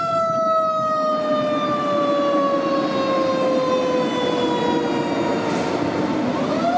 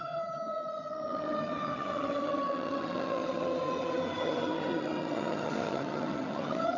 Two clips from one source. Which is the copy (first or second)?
second